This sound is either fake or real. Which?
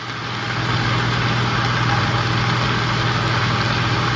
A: real